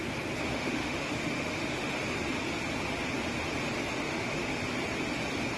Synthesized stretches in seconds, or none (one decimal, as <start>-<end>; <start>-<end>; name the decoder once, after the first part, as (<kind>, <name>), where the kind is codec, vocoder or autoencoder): 0.5-1.9 (autoencoder, DAC-VAE); 4.0-4.6